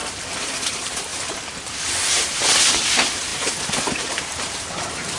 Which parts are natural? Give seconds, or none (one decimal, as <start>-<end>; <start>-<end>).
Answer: 0.0-0.6; 1.1-2.1